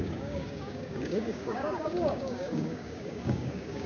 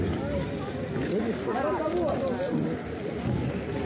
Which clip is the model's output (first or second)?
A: first